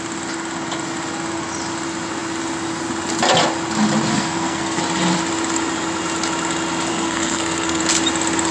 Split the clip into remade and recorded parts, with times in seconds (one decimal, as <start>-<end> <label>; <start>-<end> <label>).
0.0-4.1 recorded; 4.1-4.8 remade; 4.8-6.9 recorded; 6.9-7.8 remade; 7.8-8.5 recorded